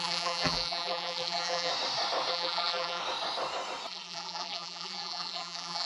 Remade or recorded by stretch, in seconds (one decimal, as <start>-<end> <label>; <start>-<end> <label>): 0.0-1.7 remade; 1.7-2.3 recorded; 2.3-3.0 remade; 3.0-3.9 recorded; 3.9-5.9 remade